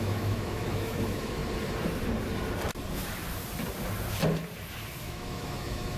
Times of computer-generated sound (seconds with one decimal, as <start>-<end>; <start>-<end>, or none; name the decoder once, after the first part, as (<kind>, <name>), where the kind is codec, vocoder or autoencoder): 0.0-1.4 (autoencoder, DAC-VAE); 5.0-6.0